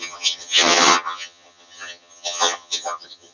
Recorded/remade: remade